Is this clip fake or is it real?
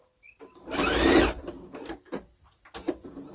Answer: fake